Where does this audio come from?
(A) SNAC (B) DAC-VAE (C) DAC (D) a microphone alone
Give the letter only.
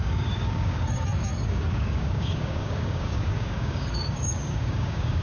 C